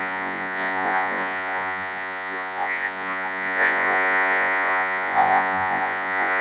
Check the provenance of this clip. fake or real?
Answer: fake